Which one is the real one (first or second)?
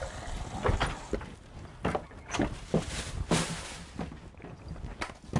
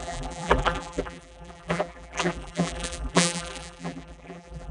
first